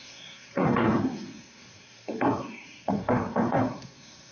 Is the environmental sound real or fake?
fake